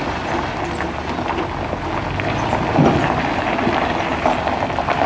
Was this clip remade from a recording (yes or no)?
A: no